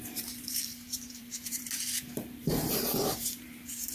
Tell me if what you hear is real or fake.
fake